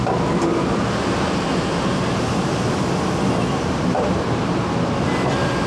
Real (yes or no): yes